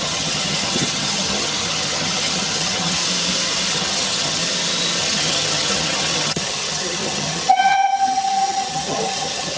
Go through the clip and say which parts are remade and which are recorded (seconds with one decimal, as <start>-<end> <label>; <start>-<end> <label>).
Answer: 0.0-3.0 remade; 3.0-3.7 recorded; 3.7-4.4 remade; 4.4-5.0 recorded; 5.0-9.6 remade